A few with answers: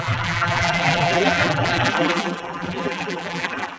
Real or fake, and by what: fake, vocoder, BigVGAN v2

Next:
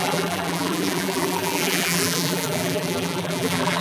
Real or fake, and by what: fake, vocoder, BigVGAN v2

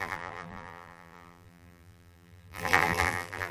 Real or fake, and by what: fake, vocoder, BigVGAN v2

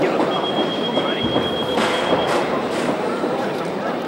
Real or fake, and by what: fake, vocoder, BigVGAN v2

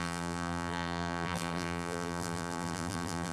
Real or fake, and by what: fake, vocoder, BigVGAN v2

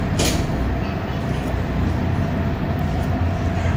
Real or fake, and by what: real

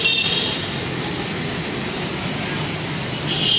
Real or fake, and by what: fake, vocoder, BigVGAN v2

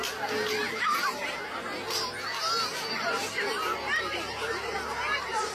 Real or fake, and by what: real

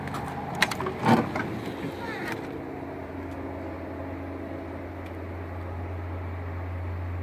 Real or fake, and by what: real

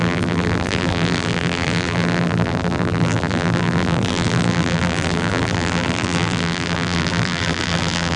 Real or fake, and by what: fake, vocoder, BigVGAN v2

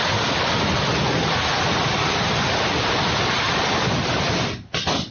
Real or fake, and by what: fake, vocoder, BigVGAN v2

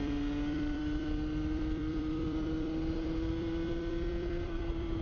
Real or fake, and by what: fake, vocoder, BigVGAN v2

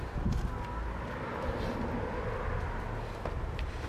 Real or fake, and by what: fake, vocoder, BigVGAN v2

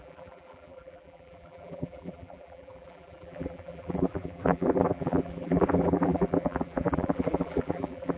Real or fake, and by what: fake, vocoder, BigVGAN v2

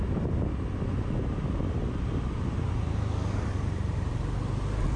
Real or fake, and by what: real